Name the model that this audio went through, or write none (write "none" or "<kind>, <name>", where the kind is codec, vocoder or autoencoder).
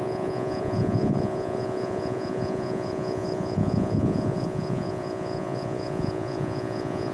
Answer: vocoder, Vocos